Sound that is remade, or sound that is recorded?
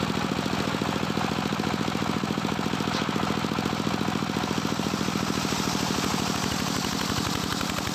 recorded